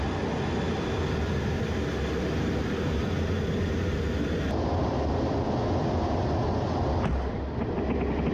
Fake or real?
real